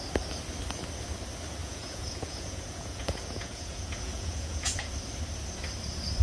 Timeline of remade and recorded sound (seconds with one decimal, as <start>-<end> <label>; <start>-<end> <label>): 0.0-1.6 recorded; 1.6-4.9 remade; 4.9-6.2 recorded